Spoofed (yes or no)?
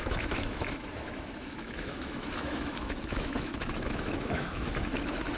yes